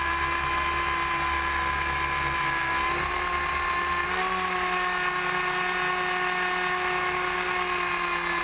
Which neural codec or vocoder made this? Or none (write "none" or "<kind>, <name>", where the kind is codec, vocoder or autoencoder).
none